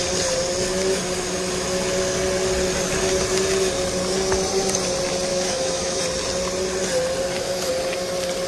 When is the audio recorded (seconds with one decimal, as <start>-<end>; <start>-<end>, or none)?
0.0-5.3; 6.0-8.5